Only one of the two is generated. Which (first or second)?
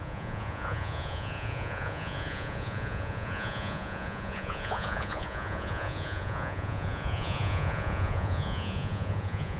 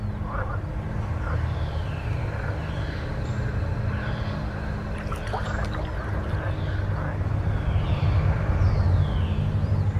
first